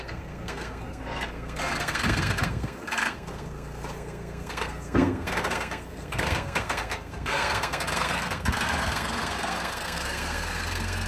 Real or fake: fake